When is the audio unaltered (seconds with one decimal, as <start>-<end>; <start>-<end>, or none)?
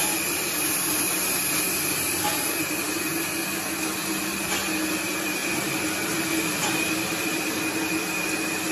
0.0-4.0; 4.5-5.4; 7.6-8.7